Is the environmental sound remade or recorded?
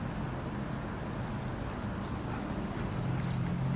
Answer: recorded